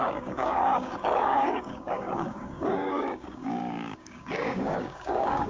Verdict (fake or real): fake